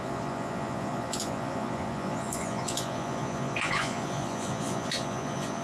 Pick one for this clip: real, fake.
fake